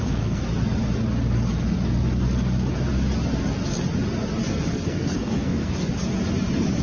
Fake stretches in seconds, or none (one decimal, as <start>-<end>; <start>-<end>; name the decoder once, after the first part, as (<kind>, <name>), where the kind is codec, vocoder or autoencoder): 0.0-0.4 (codec, SNAC); 4.5-5.8